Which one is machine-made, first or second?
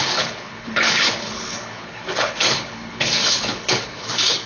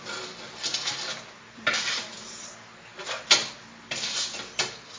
first